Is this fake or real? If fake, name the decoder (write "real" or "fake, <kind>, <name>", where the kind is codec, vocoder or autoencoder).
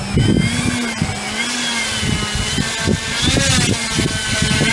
real